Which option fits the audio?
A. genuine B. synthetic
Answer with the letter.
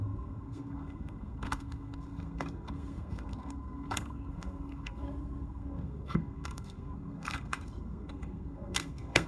B